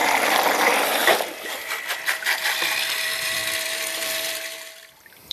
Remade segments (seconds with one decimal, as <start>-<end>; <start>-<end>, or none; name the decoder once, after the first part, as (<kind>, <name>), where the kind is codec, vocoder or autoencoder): 0.6-1.0 (vocoder, BigVGAN v2); 2.4-5.3